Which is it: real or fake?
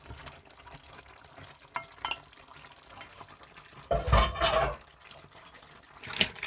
real